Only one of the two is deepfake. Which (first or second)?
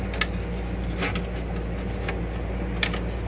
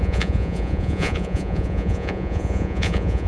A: second